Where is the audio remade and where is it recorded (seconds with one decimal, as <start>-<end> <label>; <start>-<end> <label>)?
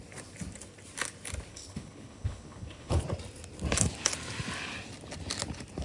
0.0-1.5 recorded; 1.5-3.0 remade; 3.0-5.8 recorded